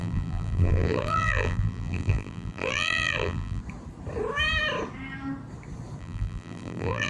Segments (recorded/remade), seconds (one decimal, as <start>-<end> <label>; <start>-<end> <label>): 0.0-3.6 remade; 3.6-6.0 recorded; 6.0-7.1 remade